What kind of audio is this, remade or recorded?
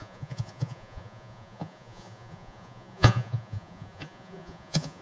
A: remade